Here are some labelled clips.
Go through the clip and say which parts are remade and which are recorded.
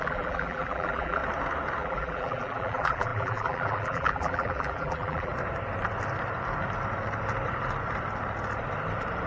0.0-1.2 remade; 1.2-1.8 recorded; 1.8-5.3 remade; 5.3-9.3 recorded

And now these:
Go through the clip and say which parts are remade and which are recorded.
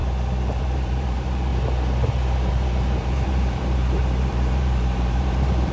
0.0-0.6 recorded; 0.6-1.5 remade; 1.5-2.5 recorded; 2.5-5.7 remade